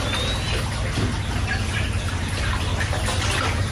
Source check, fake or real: real